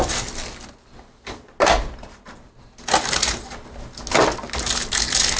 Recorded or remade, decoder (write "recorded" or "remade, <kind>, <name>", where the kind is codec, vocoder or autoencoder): recorded